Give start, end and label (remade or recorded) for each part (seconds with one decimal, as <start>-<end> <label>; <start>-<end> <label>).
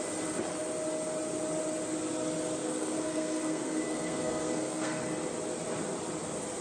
0.0-2.6 recorded; 2.6-5.0 remade; 5.0-6.6 recorded